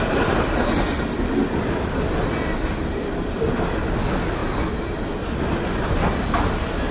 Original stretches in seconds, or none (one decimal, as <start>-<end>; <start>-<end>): 0.0-6.9

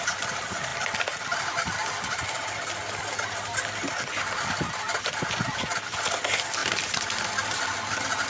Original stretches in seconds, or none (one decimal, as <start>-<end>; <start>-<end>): 0.0-8.3

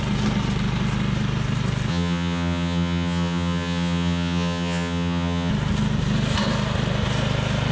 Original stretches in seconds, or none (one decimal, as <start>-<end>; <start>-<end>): 0.0-1.9; 5.5-7.7

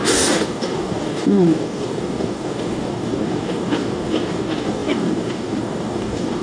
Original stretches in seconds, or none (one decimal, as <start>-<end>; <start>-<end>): none

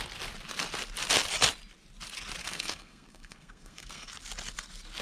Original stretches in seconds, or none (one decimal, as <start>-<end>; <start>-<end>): 0.0-2.4; 4.1-5.0